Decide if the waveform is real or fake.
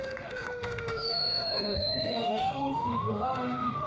fake